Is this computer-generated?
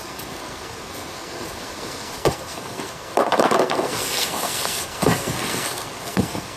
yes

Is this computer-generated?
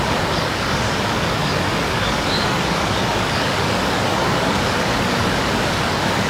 yes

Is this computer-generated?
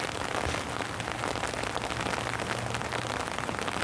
no